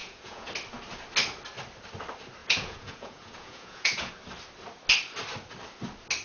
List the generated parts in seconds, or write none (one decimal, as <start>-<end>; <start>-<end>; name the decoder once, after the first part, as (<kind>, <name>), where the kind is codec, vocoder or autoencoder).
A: 0.0-0.5 (vocoder, Vocos); 2.4-4.1